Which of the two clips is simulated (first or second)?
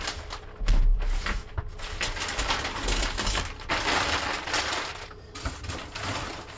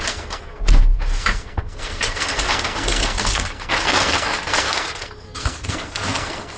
second